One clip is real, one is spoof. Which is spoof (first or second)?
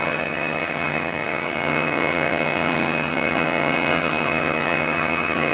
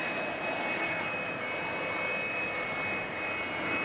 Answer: first